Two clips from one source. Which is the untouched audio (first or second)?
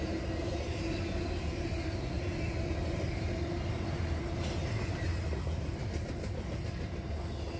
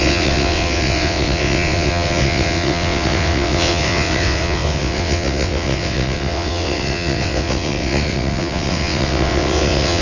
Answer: first